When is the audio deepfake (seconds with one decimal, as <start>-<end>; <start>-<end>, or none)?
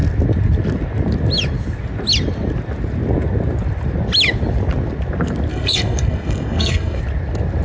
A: 5.5-7.0